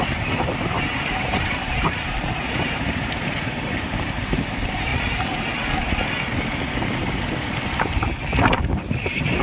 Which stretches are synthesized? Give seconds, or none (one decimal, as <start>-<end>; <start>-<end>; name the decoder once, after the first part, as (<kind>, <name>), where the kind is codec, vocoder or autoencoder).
0.0-4.9 (vocoder, BigVGAN v2); 8.6-9.4